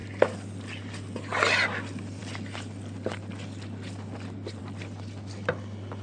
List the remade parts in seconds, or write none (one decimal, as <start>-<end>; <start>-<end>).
0.0-0.9